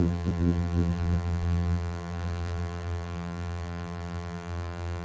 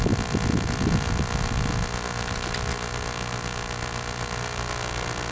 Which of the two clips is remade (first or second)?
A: first